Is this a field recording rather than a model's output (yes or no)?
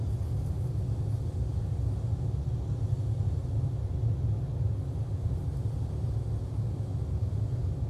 yes